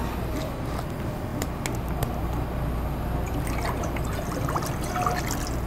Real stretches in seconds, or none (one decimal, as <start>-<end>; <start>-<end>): 0.0-5.7